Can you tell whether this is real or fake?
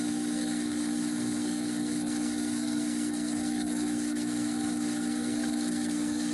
fake